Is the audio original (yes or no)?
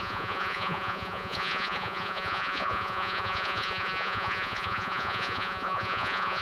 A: no